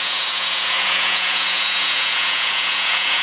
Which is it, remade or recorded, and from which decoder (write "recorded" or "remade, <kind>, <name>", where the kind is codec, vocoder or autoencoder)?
remade, vocoder, Vocos